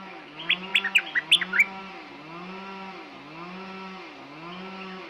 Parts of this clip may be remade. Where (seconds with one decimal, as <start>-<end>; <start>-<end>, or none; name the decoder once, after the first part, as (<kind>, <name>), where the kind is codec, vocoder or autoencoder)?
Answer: none